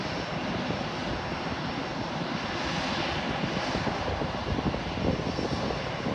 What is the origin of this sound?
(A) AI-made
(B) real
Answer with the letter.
B